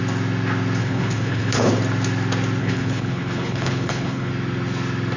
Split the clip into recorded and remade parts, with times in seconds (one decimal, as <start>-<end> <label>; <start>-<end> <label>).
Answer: 0.0-0.8 recorded; 0.8-1.7 remade; 1.7-2.6 recorded; 2.6-4.3 remade; 4.3-5.2 recorded